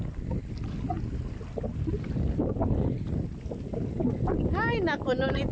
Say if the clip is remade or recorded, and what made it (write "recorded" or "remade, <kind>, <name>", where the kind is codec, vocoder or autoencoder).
recorded